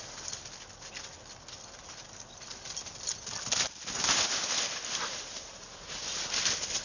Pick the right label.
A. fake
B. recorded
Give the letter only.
B